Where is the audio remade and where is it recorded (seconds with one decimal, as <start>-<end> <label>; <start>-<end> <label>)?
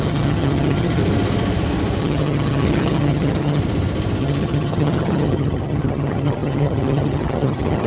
0.0-1.0 remade; 1.0-2.0 recorded; 2.0-3.6 remade; 3.6-4.2 recorded; 4.2-7.9 remade